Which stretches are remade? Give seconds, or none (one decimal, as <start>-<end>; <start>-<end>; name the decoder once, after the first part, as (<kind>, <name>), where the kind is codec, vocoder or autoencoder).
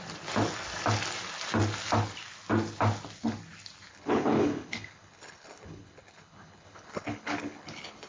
3.9-8.1 (codec, HILCodec)